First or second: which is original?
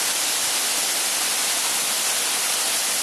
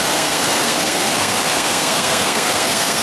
first